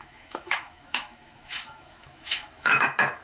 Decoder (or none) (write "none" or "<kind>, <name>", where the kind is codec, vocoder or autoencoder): autoencoder, DAC-VAE